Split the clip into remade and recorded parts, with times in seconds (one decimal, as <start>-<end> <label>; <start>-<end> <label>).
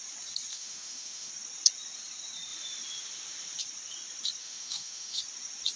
0.0-0.5 recorded; 0.5-1.3 remade; 1.3-4.4 recorded; 4.4-5.2 remade; 5.2-5.8 recorded